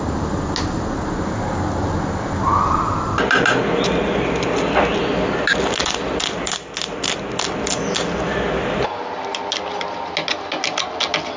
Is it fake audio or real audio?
real